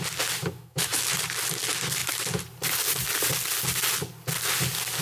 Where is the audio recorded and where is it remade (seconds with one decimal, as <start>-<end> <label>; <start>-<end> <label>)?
0.0-0.4 recorded; 0.4-1.2 remade; 1.2-5.0 recorded